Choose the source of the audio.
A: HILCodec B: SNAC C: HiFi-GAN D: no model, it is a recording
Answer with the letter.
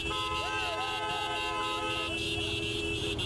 D